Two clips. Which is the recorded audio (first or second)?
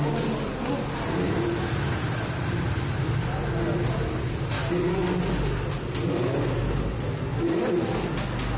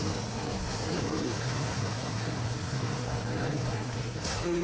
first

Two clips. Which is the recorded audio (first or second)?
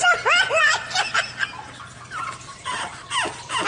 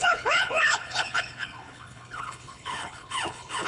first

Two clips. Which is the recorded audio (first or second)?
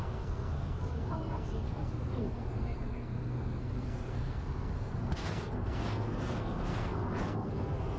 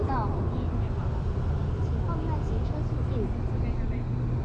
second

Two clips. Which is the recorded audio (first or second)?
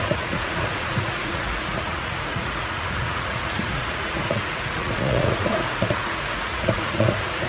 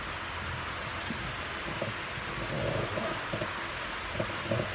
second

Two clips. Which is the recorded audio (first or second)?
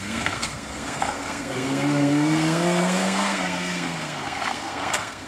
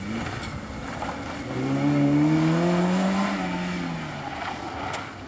second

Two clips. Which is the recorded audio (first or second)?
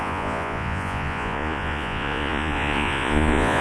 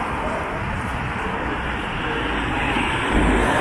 second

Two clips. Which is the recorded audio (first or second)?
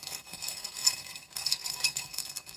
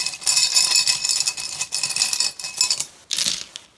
second